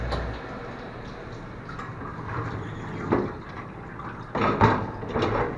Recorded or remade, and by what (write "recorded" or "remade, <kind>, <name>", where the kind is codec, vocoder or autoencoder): recorded